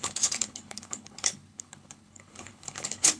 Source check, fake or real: fake